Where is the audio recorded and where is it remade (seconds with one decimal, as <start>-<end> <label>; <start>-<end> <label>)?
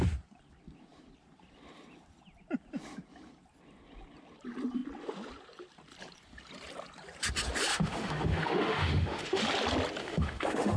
0.0-7.7 recorded; 7.7-9.4 remade; 9.4-10.0 recorded; 10.0-10.8 remade